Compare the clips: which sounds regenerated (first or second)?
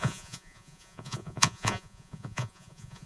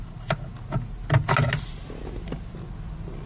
first